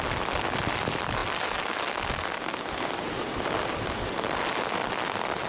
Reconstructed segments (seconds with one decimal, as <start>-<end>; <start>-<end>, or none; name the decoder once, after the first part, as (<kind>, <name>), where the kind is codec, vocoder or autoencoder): none